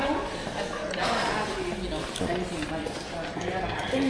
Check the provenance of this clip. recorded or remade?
recorded